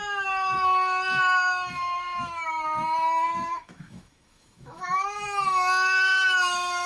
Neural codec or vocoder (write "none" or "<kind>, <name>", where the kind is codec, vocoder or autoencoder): autoencoder, DAC-VAE